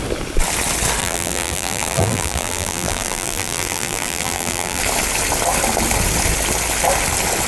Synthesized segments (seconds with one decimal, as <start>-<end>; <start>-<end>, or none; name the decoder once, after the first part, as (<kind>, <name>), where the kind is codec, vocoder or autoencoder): 1.0-4.8 (vocoder, BigVGAN v2)